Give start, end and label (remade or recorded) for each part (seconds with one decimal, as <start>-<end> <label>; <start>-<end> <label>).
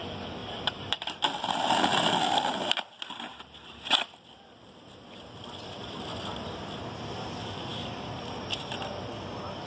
0.0-0.4 recorded; 0.4-2.1 remade; 2.1-3.3 recorded; 3.3-4.1 remade; 4.1-7.7 recorded; 7.7-9.7 remade